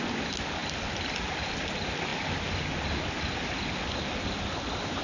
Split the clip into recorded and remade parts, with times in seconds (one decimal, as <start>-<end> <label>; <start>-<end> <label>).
0.0-5.0 recorded